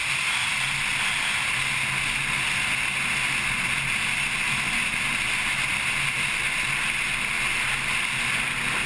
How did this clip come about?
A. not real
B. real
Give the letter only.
B